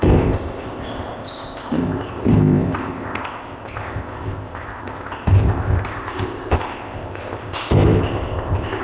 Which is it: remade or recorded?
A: remade